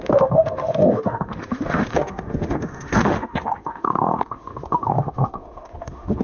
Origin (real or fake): fake